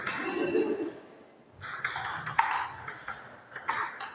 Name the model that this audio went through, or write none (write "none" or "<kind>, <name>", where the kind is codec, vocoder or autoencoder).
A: none